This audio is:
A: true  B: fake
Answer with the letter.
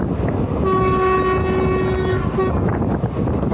A